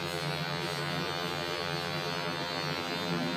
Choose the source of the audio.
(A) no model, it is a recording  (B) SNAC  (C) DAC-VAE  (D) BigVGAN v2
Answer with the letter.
D